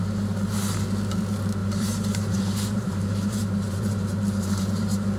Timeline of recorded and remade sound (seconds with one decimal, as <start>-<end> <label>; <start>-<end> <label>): 0.0-1.6 recorded; 1.6-4.7 remade; 4.7-5.2 recorded